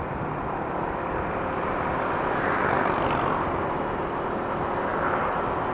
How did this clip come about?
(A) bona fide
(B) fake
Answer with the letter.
B